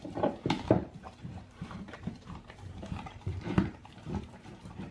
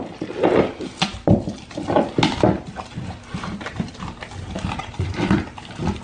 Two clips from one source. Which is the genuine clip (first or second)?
second